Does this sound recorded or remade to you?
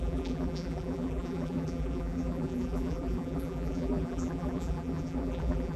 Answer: remade